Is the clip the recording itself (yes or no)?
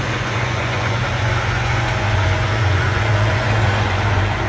no